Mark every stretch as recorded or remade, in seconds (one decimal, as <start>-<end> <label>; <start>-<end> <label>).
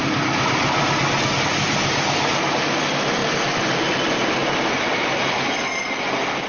0.0-6.5 recorded